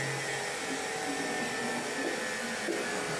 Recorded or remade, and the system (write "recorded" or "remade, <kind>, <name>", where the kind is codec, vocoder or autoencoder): recorded